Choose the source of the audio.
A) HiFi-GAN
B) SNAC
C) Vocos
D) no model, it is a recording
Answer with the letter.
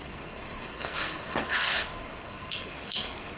B